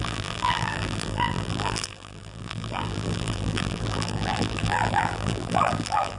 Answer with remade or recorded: remade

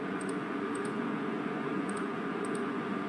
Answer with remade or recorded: remade